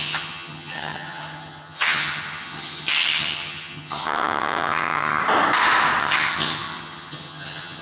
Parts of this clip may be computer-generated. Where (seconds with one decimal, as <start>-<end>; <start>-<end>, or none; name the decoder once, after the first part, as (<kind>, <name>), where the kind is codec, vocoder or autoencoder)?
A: 0.0-5.2 (vocoder, HiFi-GAN); 6.0-7.8